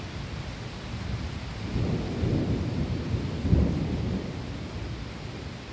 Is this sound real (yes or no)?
yes